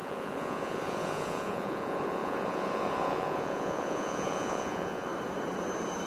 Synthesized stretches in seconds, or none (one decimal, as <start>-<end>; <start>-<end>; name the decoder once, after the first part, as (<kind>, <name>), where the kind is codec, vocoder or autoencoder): 0.0-5.1 (vocoder, Vocos)